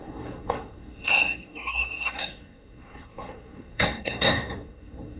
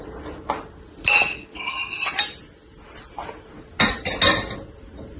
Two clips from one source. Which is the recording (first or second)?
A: second